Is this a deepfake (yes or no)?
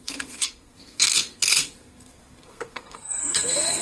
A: yes